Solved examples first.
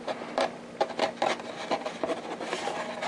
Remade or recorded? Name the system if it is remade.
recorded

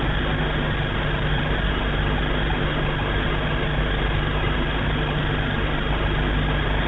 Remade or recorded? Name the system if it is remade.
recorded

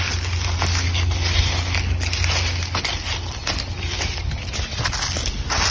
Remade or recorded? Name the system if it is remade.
recorded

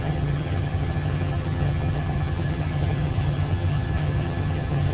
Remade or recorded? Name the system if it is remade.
remade, vocoder, HiFi-GAN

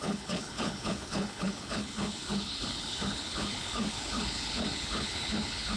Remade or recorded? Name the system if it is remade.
remade, codec, HILCodec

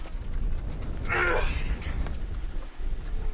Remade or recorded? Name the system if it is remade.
recorded